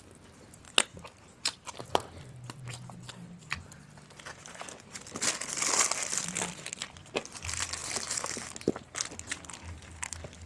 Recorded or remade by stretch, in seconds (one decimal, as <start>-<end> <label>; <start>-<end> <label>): 0.0-10.5 recorded